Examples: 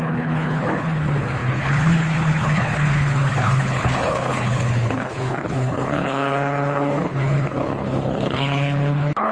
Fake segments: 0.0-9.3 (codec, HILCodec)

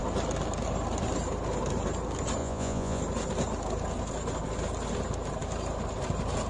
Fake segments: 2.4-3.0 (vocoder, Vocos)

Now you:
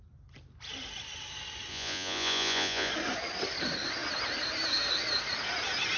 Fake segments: 1.7-2.9 (vocoder, Vocos)

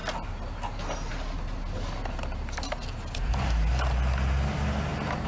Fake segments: none